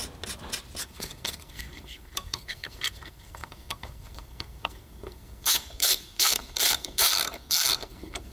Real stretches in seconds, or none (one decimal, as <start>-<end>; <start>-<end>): 0.0-0.8